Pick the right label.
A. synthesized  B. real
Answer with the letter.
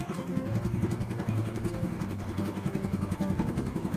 A